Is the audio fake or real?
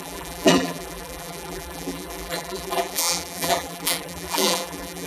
fake